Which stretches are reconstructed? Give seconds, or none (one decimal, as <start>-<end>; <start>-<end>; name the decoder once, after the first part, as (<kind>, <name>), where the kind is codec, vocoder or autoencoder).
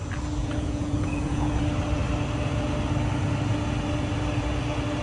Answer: 0.4-1.5 (vocoder, Vocos)